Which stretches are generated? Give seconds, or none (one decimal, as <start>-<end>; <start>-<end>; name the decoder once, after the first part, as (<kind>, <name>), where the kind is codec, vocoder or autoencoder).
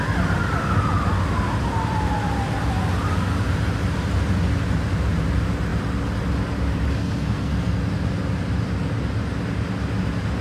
7.0-7.8 (codec, SNAC)